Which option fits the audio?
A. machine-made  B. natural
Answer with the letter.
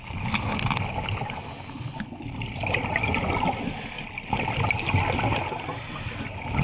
B